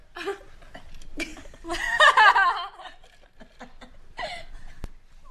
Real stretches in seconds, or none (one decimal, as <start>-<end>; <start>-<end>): 0.0-5.3